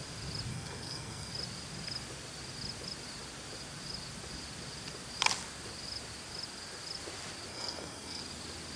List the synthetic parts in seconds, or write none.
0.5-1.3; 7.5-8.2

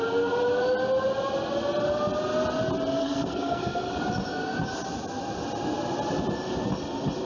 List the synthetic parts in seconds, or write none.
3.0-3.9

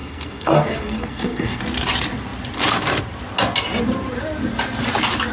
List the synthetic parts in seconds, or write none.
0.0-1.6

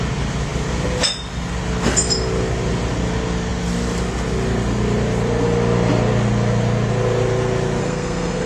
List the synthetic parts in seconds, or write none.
7.8-8.5

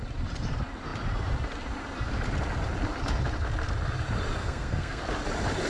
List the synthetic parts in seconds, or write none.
4.4-5.0

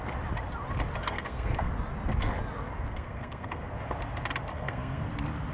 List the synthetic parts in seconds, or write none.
1.0-1.7; 2.9-3.7; 4.5-5.1

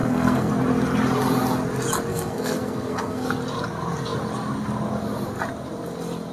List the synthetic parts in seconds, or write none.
0.0-0.5; 2.1-3.3